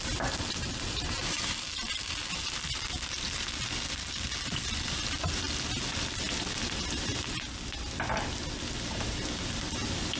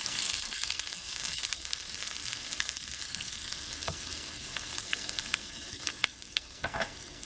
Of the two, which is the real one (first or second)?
first